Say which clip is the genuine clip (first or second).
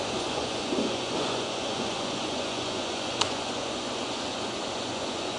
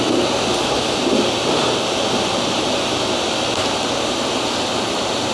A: second